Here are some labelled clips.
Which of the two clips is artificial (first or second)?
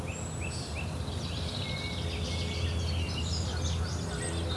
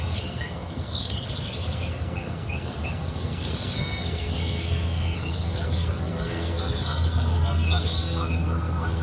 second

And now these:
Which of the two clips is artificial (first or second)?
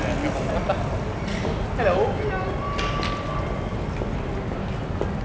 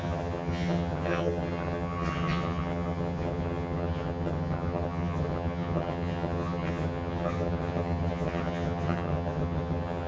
second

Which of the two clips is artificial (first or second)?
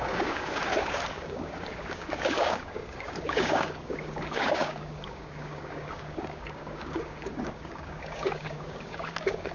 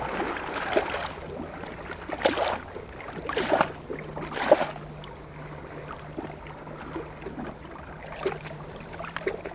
first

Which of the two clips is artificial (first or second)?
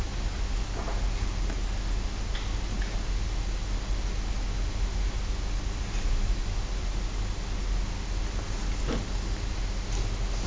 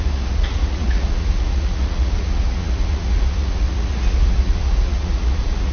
second